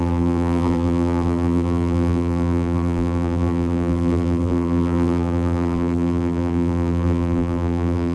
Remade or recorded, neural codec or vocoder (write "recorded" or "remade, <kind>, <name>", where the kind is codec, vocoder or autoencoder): remade, vocoder, BigVGAN v2